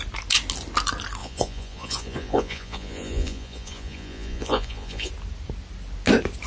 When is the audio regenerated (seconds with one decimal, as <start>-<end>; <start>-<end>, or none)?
1.2-5.1